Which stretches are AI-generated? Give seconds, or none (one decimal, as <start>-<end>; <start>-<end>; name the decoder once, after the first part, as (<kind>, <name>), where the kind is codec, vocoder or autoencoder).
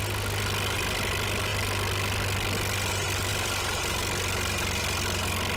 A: 3.3-5.6 (vocoder, BigVGAN v2)